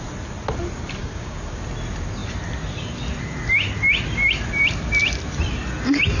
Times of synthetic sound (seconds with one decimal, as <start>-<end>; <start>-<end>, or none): 1.0-1.6